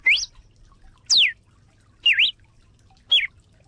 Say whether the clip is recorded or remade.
recorded